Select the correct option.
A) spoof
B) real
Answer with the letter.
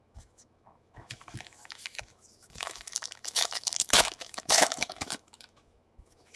A